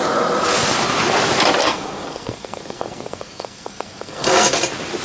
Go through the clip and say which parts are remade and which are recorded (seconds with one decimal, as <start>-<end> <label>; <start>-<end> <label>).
0.0-1.6 recorded; 1.6-4.6 remade; 4.6-5.0 recorded